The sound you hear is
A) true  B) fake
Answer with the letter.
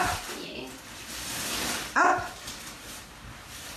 A